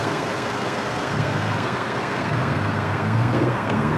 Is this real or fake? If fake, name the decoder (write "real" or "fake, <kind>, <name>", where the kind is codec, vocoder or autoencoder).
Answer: fake, codec, SNAC